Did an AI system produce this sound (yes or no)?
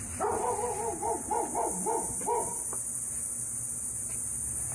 no